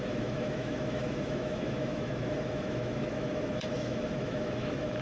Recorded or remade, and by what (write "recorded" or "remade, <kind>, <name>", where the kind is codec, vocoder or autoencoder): remade, autoencoder, DAC-VAE